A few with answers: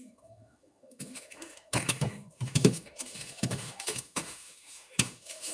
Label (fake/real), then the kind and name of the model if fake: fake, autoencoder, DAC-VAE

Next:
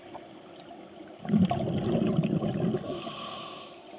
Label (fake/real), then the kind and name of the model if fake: real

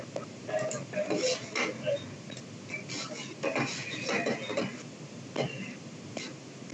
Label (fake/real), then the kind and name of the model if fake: real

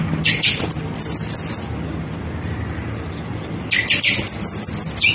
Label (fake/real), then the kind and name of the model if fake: real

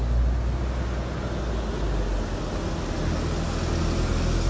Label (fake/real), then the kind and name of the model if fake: real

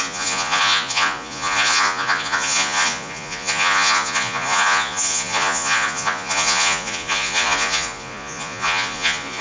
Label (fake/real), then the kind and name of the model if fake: fake, vocoder, Vocos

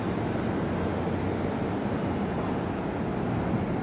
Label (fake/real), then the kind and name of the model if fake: real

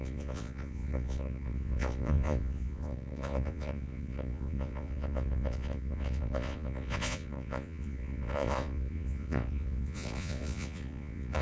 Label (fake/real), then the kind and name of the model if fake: fake, vocoder, Vocos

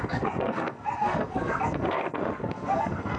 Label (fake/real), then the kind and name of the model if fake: fake, codec, SNAC